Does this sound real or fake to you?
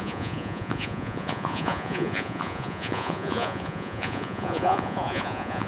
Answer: fake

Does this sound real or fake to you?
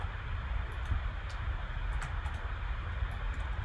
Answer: real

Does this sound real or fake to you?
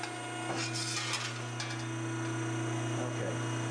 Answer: real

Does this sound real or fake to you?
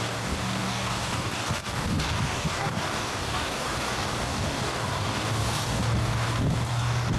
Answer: fake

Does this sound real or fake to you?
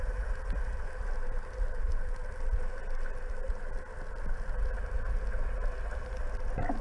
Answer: real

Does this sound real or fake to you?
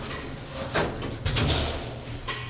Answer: real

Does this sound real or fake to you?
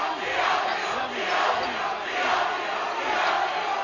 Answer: real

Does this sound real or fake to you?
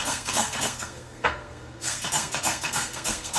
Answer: fake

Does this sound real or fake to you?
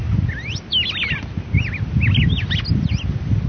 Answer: real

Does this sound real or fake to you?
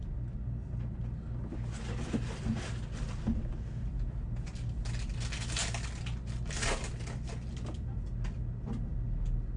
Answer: real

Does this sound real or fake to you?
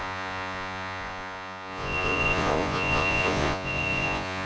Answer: fake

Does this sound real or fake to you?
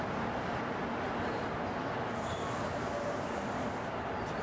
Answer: real